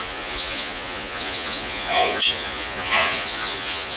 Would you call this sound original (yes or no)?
no